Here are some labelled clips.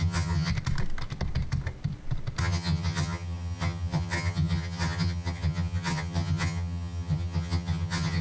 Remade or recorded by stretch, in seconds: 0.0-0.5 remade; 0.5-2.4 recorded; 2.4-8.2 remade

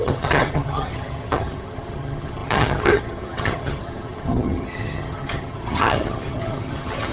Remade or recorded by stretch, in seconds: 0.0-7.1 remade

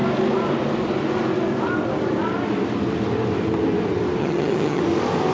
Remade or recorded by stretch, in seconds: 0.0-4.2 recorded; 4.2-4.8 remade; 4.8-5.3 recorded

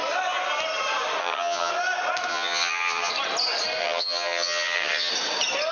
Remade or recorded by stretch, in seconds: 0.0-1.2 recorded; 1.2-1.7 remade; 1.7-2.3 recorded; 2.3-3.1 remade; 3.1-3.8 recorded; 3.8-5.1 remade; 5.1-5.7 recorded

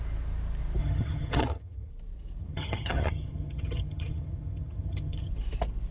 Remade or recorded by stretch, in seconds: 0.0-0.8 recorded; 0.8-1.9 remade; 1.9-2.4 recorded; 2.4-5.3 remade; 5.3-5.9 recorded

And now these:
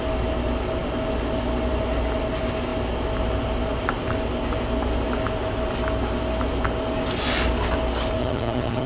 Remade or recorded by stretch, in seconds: 0.0-8.2 recorded; 8.2-8.9 remade

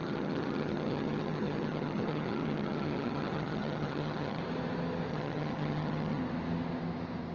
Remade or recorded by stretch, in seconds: 0.0-4.4 remade; 4.4-5.1 recorded; 5.1-6.2 remade; 6.2-7.3 recorded

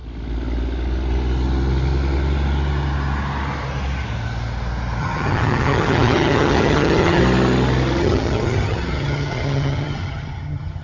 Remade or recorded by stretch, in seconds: 0.0-5.0 recorded; 5.0-7.2 remade; 7.2-8.0 recorded; 8.0-10.8 remade